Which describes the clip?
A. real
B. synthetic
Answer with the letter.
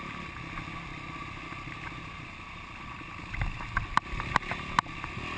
A